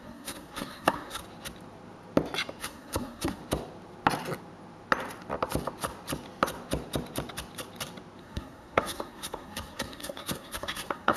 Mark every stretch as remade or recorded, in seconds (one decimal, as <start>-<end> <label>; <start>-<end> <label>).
0.0-1.2 remade; 1.2-2.6 recorded; 2.6-3.4 remade; 3.4-8.2 recorded; 8.2-11.2 remade